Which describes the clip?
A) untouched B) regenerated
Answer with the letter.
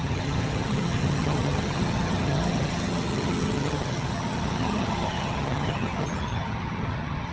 B